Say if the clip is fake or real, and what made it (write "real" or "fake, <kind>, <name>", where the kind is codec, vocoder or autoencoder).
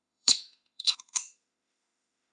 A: fake, autoencoder, DAC-VAE